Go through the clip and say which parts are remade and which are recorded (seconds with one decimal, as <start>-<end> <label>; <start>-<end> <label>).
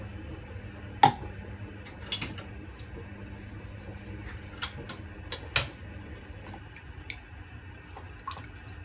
0.0-8.8 recorded